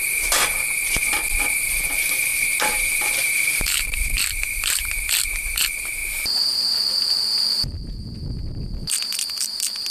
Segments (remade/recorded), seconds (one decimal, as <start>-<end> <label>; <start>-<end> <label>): 0.0-2.3 recorded; 2.3-5.0 remade; 5.0-9.9 recorded